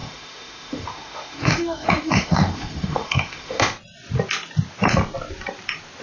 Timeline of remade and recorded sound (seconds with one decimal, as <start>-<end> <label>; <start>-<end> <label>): 0.0-3.6 remade; 3.6-6.0 recorded